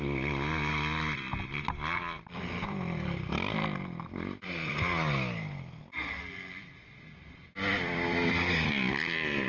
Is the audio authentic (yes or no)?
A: yes